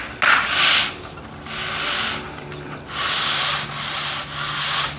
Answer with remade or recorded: recorded